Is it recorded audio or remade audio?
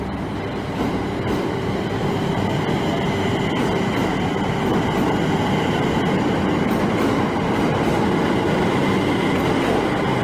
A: recorded